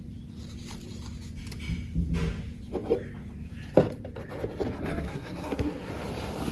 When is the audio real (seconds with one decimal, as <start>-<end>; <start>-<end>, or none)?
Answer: 0.0-4.9; 5.9-6.5